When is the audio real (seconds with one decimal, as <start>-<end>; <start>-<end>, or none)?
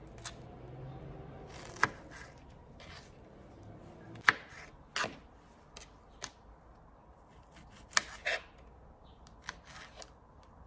0.0-10.7